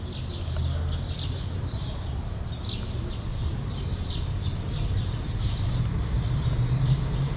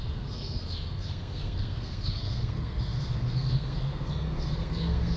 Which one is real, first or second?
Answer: first